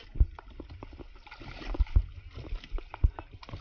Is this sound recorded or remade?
recorded